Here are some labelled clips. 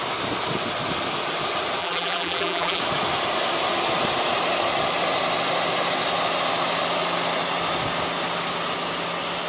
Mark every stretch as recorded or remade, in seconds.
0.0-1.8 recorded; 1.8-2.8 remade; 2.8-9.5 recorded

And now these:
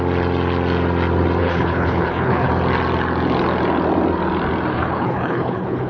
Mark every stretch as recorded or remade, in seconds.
0.0-1.4 recorded; 1.4-2.5 remade; 2.5-4.7 recorded; 4.7-5.9 remade

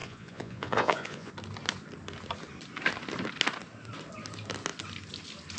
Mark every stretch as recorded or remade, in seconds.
0.0-1.3 remade; 1.3-5.6 recorded

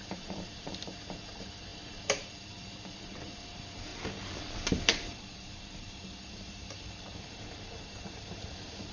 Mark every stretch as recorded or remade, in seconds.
0.0-8.9 remade